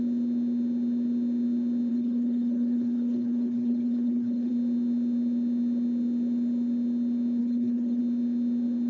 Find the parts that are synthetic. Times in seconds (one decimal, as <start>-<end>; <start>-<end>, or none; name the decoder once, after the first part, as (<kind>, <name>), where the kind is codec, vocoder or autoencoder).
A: 1.9-4.5 (codec, HILCodec); 7.4-8.0